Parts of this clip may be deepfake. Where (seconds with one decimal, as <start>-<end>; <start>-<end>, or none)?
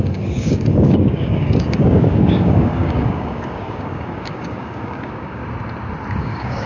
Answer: 0.0-5.4; 6.2-6.7